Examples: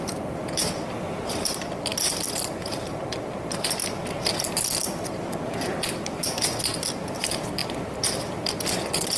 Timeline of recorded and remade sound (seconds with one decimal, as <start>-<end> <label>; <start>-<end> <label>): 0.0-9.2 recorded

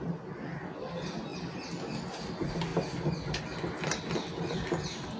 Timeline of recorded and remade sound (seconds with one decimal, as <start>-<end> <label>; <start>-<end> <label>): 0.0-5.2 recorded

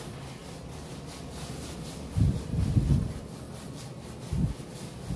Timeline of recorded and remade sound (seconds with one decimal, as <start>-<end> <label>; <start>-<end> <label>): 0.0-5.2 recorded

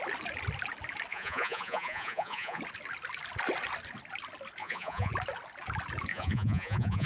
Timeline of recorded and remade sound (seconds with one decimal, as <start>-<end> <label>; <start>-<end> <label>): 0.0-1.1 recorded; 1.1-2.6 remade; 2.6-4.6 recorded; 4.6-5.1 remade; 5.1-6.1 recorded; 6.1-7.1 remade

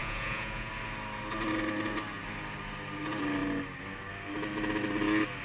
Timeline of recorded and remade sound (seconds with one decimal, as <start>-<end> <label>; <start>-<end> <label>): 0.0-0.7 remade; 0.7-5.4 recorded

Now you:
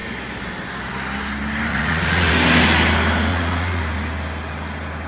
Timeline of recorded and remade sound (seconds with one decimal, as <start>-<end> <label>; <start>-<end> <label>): 0.0-1.7 recorded; 1.7-2.3 remade; 2.3-3.3 recorded; 3.3-3.8 remade; 3.8-5.1 recorded

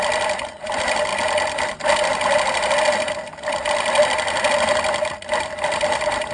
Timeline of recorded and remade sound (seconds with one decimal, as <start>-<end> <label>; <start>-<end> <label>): 0.0-6.3 recorded

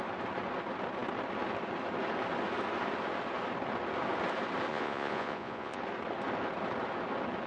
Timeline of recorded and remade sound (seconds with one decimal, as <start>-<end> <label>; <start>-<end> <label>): 0.0-4.7 recorded; 4.7-5.8 remade; 5.8-7.5 recorded